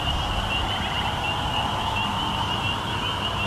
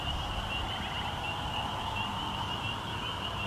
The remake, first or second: second